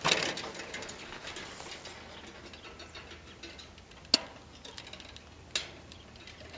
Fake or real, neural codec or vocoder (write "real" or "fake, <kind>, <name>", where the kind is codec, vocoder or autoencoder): real